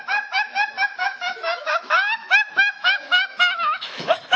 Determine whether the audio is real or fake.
fake